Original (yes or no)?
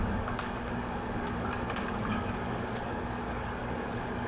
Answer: no